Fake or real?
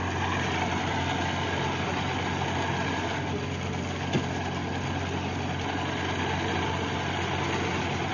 real